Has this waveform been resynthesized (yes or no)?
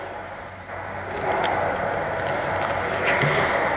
no